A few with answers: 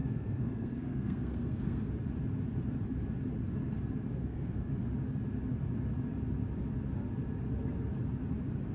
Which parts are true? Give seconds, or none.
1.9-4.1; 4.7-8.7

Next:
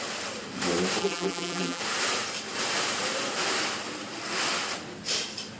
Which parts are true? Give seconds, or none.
0.0-1.0; 1.8-5.6

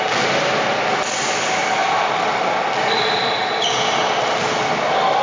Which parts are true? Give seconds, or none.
0.0-5.2

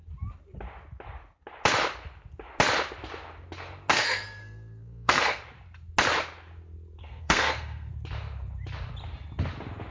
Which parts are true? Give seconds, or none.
0.0-3.9; 5.4-7.0; 7.9-9.9

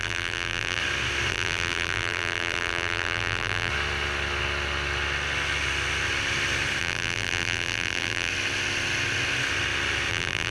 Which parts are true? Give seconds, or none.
0.8-1.3; 3.7-6.8; 8.3-10.1

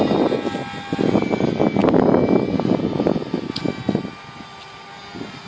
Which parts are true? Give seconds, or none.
0.0-5.5

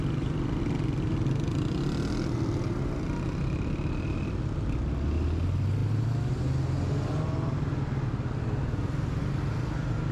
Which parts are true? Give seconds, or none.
0.0-10.1

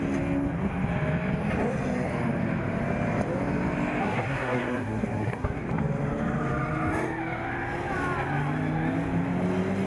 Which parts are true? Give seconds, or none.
0.0-4.0; 5.6-9.9